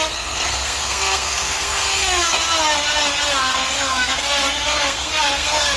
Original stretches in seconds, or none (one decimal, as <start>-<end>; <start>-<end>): 2.3-3.4